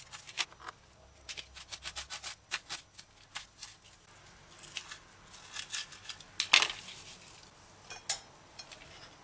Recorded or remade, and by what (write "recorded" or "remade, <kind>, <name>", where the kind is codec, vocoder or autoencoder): recorded